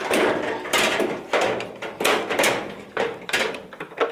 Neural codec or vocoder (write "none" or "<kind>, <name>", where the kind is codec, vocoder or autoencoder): vocoder, BigVGAN v2